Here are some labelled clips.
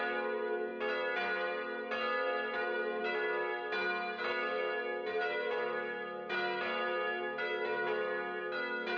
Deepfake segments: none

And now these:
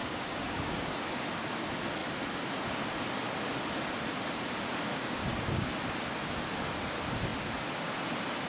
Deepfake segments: 0.0-0.9 (codec, DAC); 4.9-5.7

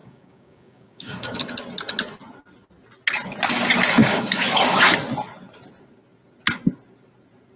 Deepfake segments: 0.0-1.4 (codec, DAC); 4.0-4.9

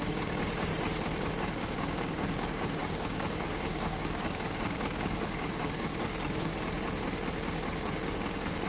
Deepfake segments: 0.0-0.7 (codec, DAC); 1.3-6.5; 8.1-8.7

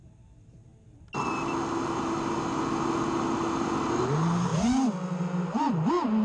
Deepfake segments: none